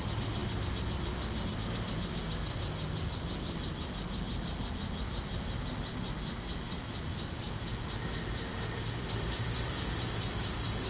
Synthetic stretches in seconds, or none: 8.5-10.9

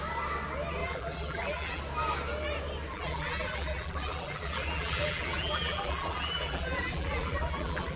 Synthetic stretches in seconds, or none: 0.8-1.8; 2.9-8.0

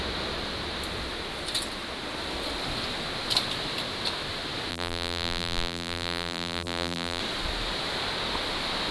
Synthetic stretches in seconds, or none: 4.7-7.2

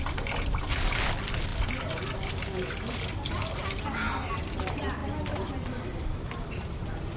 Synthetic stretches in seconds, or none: none

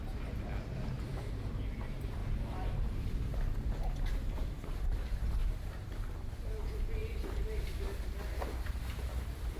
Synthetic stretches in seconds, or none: 2.2-2.7; 5.4-6.6; 7.0-7.6

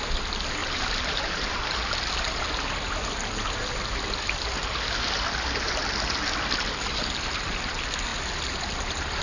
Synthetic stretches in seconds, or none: 0.6-1.6

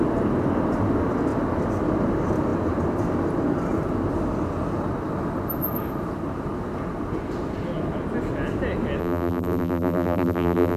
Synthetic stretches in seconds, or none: 9.0-10.8